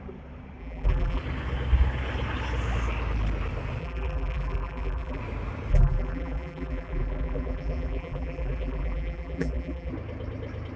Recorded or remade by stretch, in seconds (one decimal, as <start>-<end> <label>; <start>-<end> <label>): 0.0-0.6 recorded; 0.6-1.2 remade; 1.2-3.8 recorded; 3.8-5.2 remade; 5.2-5.7 recorded; 5.7-9.9 remade; 9.9-10.8 recorded